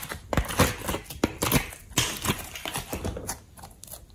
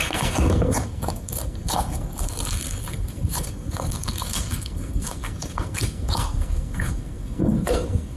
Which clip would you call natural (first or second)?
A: first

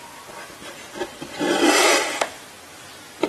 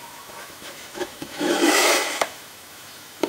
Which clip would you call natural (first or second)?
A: first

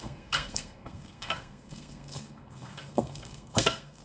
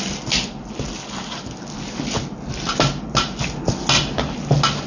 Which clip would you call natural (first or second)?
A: second